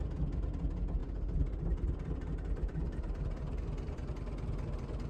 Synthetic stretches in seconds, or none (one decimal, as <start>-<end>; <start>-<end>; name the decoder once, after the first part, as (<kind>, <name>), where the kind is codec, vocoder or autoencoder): 1.0-4.1 (vocoder, BigVGAN v2)